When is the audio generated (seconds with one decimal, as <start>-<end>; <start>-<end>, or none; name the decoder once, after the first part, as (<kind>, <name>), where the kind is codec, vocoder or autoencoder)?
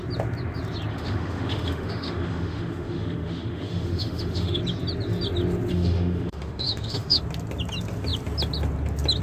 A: 0.9-4.6 (autoencoder, DAC-VAE); 5.7-7.2